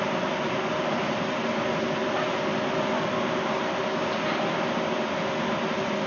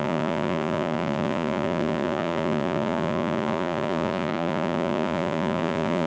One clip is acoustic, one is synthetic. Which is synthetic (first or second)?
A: second